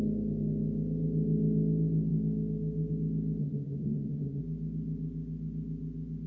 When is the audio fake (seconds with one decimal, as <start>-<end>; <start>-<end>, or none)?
3.4-4.4